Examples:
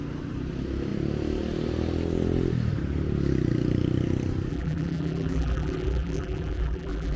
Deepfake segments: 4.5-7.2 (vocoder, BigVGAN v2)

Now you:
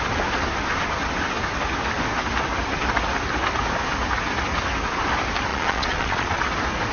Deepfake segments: 5.5-6.4 (vocoder, Vocos)

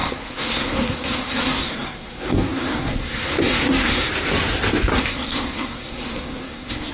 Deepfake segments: 0.0-4.1 (codec, SNAC); 4.9-6.9

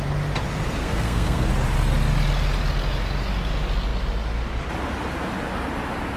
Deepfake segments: 0.8-1.5 (codec, SNAC)

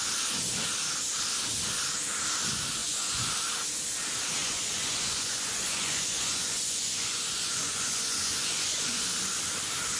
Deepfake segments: 2.8-3.3 (vocoder, Vocos); 4.4-9.0